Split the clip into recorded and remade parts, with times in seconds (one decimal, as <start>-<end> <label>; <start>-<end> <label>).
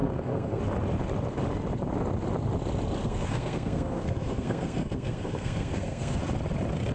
0.0-0.6 remade; 0.6-3.0 recorded; 3.0-6.2 remade; 6.2-6.9 recorded